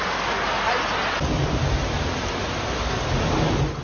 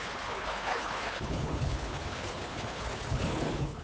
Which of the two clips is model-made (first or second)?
second